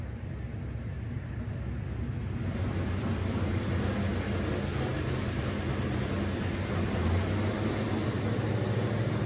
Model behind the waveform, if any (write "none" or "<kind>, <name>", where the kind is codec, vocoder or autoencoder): none